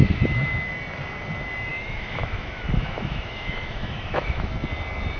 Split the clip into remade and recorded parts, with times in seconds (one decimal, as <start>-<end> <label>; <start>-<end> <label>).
0.0-0.7 remade; 0.7-1.7 recorded; 1.7-4.5 remade; 4.5-5.2 recorded